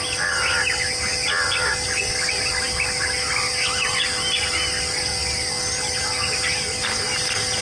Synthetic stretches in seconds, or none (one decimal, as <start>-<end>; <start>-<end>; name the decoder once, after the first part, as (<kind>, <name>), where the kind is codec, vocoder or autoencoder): 7.1-7.6 (vocoder, BigVGAN v2)